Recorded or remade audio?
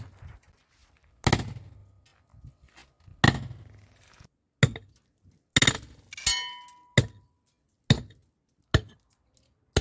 recorded